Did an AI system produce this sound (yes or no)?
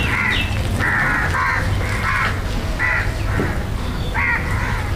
no